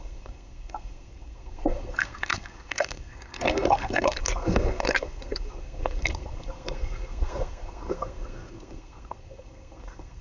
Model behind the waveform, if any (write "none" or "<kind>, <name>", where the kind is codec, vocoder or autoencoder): codec, SNAC